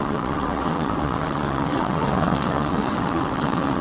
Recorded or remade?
remade